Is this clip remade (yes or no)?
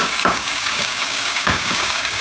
yes